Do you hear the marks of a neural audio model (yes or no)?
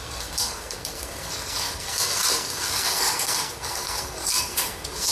yes